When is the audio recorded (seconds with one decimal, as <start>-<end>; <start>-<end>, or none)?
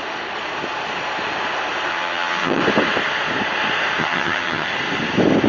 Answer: 0.0-1.9; 2.6-4.0; 4.7-5.5